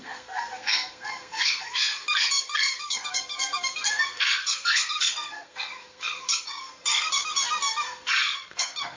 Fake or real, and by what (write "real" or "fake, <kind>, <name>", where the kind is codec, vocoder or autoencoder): fake, codec, SNAC